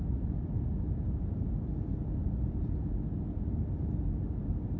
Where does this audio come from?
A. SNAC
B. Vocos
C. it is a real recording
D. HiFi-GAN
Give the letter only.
C